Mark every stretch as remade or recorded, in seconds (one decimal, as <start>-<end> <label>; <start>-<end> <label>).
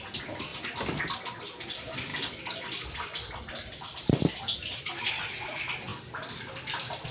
0.0-2.1 recorded; 2.1-5.1 remade; 5.1-5.9 recorded; 5.9-7.1 remade